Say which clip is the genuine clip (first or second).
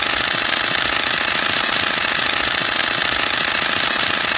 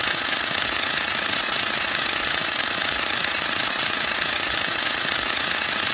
first